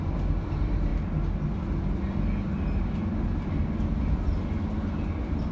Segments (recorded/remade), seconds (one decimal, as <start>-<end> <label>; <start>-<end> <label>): 0.0-5.5 recorded